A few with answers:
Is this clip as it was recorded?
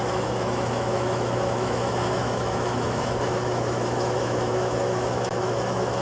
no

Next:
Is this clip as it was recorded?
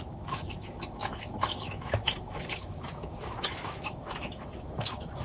no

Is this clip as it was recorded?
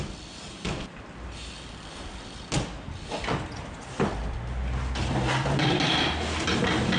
yes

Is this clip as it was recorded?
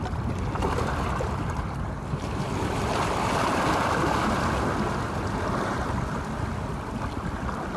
yes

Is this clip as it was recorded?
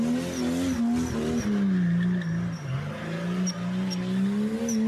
yes